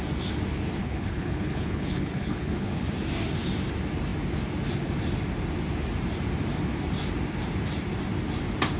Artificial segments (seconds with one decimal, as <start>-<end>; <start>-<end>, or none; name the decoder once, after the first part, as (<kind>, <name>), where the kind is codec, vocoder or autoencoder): 0.8-2.7 (codec, HILCodec)